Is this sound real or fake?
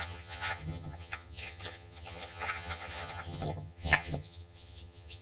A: fake